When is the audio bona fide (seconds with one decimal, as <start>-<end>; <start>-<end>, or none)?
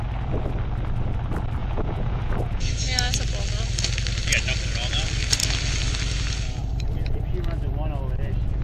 0.0-1.6; 2.7-8.6